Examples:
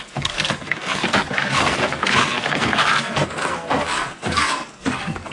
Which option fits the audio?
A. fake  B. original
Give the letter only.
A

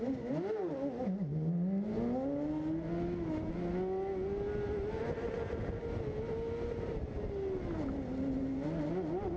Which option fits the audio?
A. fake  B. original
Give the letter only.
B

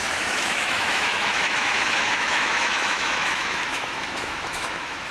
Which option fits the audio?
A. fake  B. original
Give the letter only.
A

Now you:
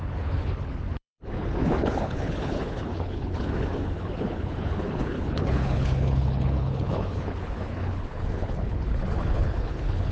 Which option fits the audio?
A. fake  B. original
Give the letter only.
A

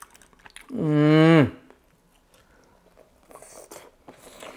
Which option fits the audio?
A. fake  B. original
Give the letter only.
B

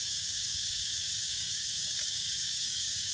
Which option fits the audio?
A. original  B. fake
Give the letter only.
B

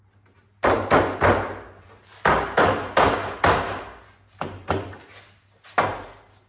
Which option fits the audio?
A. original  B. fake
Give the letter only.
A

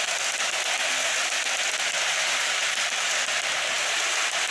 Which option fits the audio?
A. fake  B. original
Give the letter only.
B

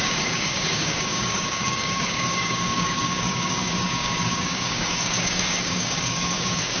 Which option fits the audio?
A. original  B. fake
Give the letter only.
B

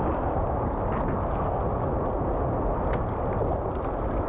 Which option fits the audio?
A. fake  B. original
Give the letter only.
B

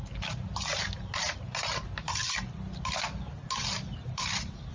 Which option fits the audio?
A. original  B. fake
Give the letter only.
A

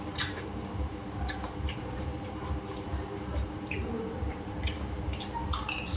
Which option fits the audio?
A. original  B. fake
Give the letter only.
B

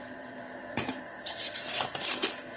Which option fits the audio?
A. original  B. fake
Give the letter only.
B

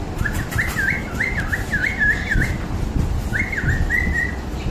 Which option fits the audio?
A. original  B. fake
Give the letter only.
A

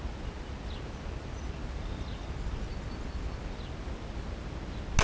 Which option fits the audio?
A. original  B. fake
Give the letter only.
A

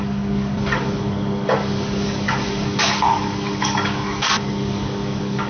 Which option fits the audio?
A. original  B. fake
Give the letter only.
B